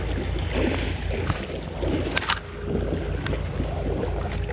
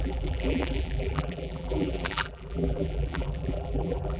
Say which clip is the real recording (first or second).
first